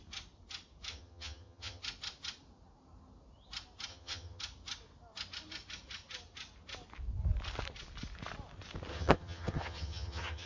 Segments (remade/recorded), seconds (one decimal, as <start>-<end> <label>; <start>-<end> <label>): 0.0-0.9 recorded; 0.9-1.8 remade; 1.8-3.9 recorded; 3.9-4.4 remade; 4.4-8.9 recorded; 8.9-10.5 remade